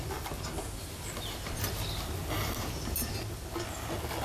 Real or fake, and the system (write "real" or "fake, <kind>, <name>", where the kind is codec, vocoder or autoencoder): real